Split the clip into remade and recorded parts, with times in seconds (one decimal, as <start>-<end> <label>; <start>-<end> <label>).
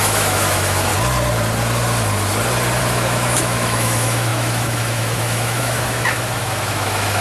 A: 0.0-0.9 remade; 0.9-2.8 recorded; 2.8-7.2 remade